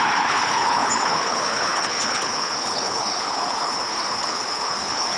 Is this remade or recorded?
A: remade